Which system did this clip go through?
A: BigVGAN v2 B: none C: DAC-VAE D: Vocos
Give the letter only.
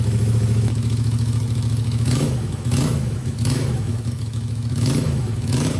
C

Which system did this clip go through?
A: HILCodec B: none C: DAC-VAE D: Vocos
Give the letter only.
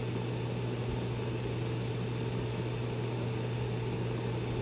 B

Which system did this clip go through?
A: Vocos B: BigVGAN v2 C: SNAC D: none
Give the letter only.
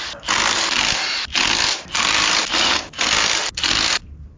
D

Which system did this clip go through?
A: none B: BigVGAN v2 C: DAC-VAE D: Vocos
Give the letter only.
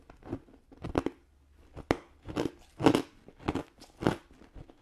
A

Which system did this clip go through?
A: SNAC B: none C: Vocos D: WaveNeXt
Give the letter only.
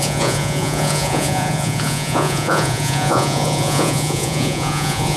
C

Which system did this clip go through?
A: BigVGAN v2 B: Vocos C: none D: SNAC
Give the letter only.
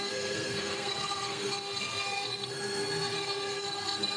D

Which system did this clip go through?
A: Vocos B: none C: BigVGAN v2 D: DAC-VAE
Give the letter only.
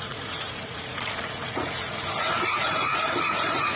A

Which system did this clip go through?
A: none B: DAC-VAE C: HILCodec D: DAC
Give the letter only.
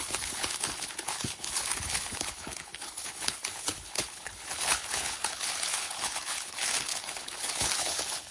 C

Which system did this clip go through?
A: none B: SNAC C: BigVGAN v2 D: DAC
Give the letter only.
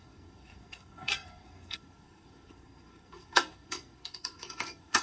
B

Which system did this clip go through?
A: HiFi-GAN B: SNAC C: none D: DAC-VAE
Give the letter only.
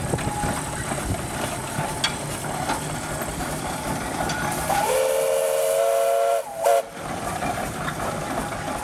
C